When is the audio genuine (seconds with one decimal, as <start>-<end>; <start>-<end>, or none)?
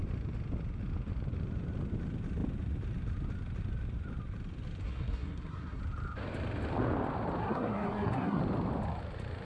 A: 0.0-4.8; 5.8-7.4; 8.4-9.4